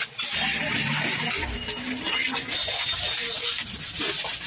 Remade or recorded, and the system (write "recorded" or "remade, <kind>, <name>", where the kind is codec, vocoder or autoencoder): recorded